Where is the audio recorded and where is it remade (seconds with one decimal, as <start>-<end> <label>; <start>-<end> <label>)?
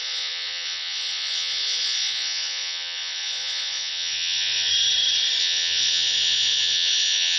0.0-4.7 remade; 4.7-5.4 recorded; 5.4-7.4 remade